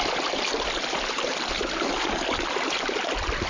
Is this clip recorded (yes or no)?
yes